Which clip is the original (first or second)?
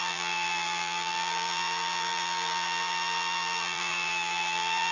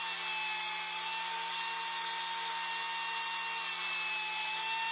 second